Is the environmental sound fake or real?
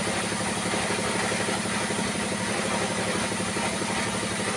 real